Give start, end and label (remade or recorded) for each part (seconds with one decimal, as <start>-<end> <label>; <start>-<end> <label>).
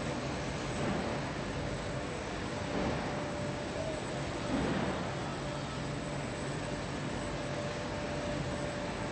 0.0-1.1 recorded; 1.1-3.8 remade; 3.8-7.5 recorded; 7.5-8.4 remade; 8.4-9.1 recorded